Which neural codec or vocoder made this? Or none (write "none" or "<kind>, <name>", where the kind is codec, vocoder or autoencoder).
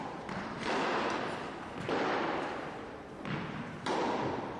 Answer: none